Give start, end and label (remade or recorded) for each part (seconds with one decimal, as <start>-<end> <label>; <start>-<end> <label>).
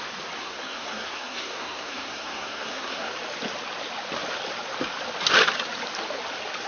0.0-0.4 recorded; 0.4-3.1 remade; 3.1-6.7 recorded